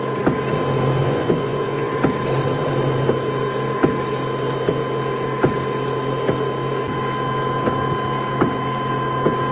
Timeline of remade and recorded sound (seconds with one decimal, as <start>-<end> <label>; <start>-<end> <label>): 0.0-1.0 recorded; 1.0-1.9 remade; 1.9-9.5 recorded